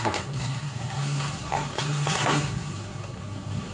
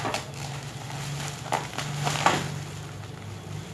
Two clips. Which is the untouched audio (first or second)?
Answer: second